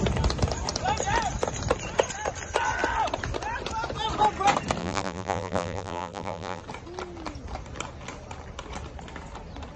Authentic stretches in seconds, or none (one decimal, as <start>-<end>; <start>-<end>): 0.0-4.8; 6.6-9.8